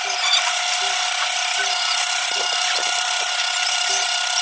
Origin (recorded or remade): remade